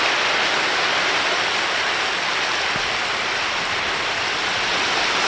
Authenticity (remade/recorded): recorded